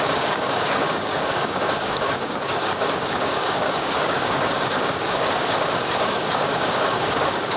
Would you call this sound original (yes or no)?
no